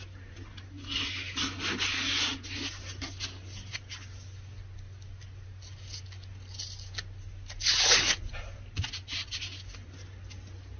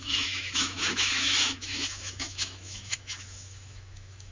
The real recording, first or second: first